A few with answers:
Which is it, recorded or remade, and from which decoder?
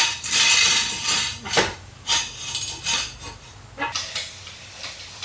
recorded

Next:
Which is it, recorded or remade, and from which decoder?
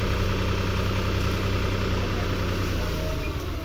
recorded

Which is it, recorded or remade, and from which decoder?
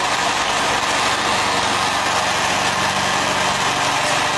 recorded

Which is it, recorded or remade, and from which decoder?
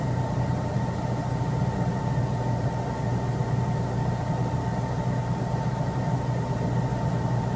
recorded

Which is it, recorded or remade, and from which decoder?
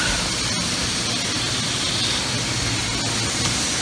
recorded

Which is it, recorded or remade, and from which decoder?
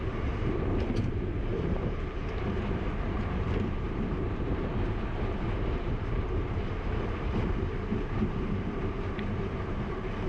remade, vocoder, BigVGAN v2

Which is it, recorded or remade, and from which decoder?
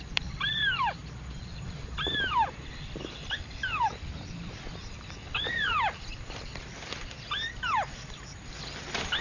remade, vocoder, BigVGAN v2